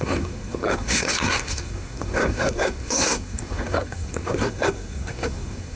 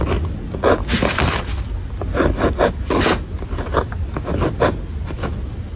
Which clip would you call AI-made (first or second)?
first